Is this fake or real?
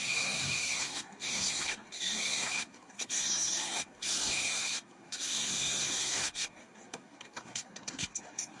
fake